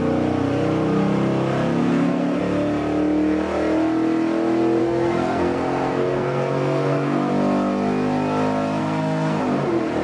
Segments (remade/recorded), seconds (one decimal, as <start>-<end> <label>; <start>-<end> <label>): 0.0-1.8 recorded; 1.8-2.4 remade; 2.4-4.8 recorded; 4.8-7.3 remade; 7.3-8.8 recorded; 8.8-9.4 remade; 9.4-10.0 recorded